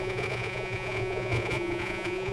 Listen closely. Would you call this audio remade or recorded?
remade